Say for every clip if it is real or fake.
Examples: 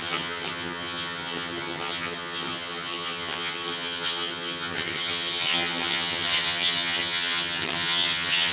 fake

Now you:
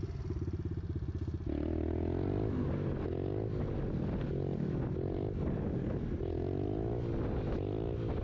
real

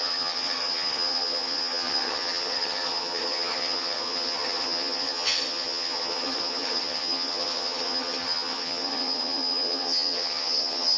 fake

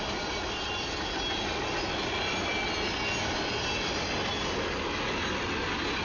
real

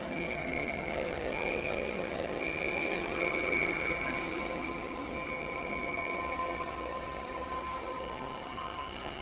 fake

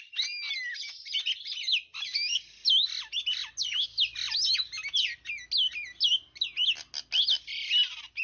real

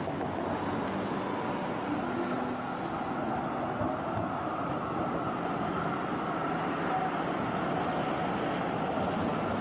real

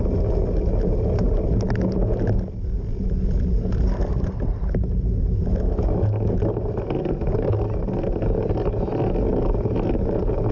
real